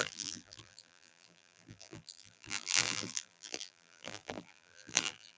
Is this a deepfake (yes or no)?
yes